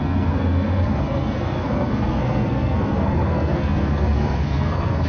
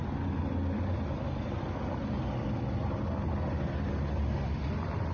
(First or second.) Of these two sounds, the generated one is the first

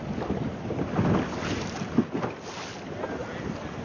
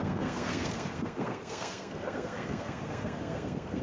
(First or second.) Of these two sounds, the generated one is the second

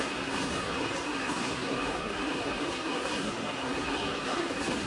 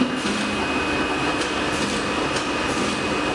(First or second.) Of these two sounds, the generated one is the first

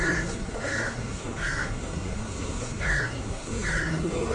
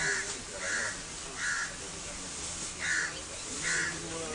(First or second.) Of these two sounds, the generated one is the first